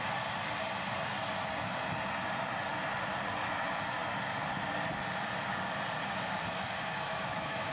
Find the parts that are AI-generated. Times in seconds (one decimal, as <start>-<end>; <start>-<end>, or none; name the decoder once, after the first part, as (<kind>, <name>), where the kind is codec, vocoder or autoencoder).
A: 6.9-7.7 (autoencoder, DAC-VAE)